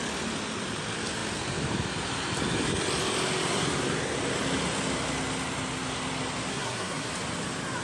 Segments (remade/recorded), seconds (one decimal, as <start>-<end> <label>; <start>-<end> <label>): 0.0-6.5 recorded; 6.5-7.1 remade; 7.1-7.8 recorded